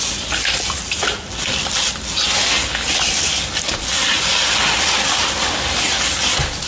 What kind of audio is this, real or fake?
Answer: real